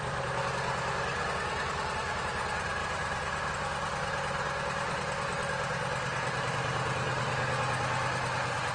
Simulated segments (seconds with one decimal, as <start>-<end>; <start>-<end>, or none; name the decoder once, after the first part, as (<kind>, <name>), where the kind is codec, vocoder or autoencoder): 1.1-2.1 (vocoder, BigVGAN v2); 2.8-3.5